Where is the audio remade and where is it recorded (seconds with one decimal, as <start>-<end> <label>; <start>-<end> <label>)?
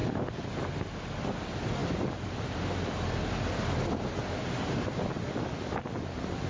0.0-1.8 recorded; 1.8-4.2 remade; 4.2-6.5 recorded